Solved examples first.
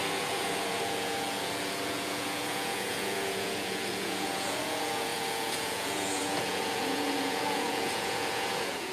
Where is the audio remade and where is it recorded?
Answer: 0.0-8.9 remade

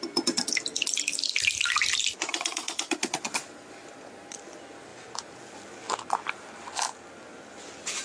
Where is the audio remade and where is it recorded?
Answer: 0.0-2.3 recorded; 2.3-4.4 remade; 4.4-8.0 recorded

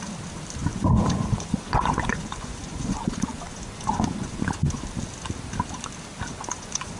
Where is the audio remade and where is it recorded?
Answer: 0.0-0.6 recorded; 0.6-4.8 remade; 4.8-6.3 recorded; 6.3-7.0 remade

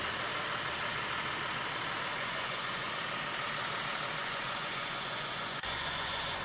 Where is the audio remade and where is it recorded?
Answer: 0.0-2.1 recorded; 2.1-2.9 remade; 2.9-4.2 recorded; 4.2-6.4 remade

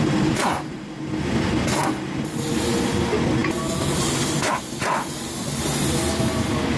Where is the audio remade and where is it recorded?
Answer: 0.0-6.8 recorded